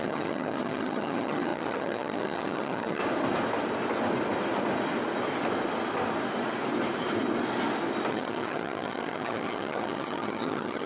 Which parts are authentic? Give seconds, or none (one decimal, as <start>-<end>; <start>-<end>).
3.0-8.1